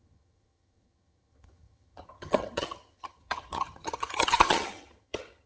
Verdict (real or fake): fake